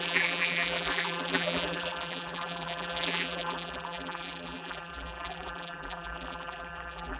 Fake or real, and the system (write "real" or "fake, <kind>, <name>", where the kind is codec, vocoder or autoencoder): fake, vocoder, BigVGAN v2